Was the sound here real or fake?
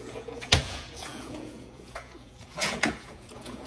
fake